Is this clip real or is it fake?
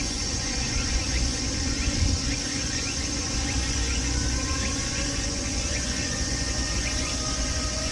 fake